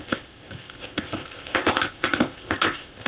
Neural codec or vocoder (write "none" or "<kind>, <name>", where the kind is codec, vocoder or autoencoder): codec, ZipCodec